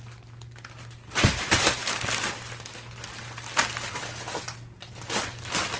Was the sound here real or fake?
real